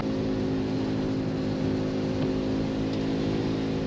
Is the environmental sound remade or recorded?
recorded